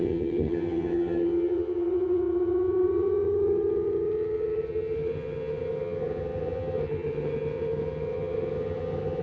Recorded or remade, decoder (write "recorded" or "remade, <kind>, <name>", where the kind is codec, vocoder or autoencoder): remade, vocoder, HiFi-GAN